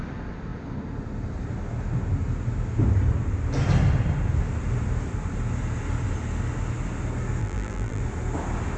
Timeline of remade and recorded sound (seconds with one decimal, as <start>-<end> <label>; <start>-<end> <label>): 0.0-7.4 recorded; 7.4-8.0 remade; 8.0-8.8 recorded